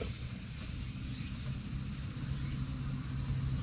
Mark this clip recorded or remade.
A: recorded